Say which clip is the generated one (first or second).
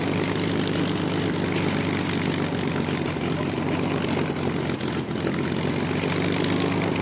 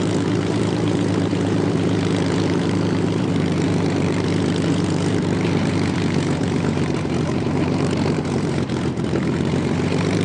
second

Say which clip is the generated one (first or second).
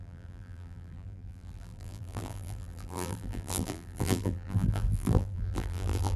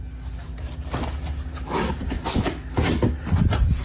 first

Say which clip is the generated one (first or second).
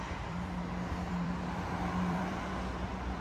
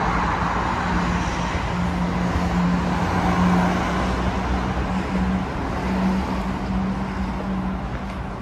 first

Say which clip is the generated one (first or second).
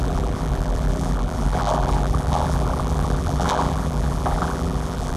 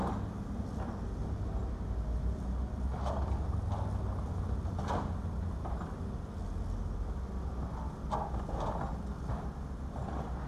first